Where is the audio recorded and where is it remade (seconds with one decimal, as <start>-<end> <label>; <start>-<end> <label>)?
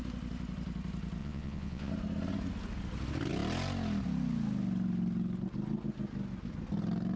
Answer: 0.0-1.2 recorded; 1.2-1.9 remade; 1.9-7.2 recorded